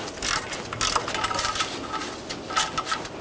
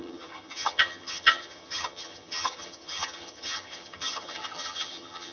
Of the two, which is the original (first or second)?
first